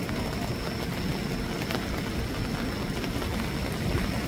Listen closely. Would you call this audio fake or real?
real